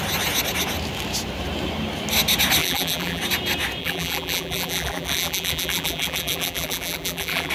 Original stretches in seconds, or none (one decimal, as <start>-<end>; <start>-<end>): 0.0-2.6; 3.2-3.8